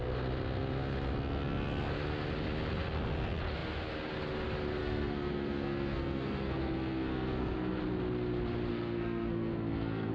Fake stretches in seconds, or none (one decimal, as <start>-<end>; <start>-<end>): 4.8-7.8; 8.7-10.1

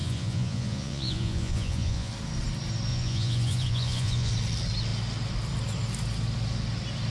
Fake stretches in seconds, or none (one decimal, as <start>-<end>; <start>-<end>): 0.0-2.1; 2.9-4.3

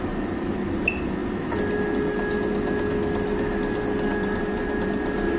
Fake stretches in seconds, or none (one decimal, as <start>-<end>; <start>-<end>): none

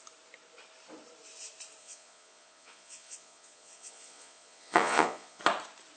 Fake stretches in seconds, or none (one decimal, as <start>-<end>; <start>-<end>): 1.8-5.4

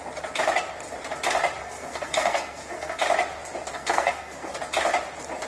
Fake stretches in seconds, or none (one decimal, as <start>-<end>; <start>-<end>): 1.6-3.0; 3.7-4.5

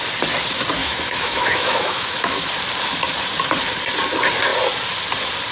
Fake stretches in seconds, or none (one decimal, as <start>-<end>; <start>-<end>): 0.8-2.5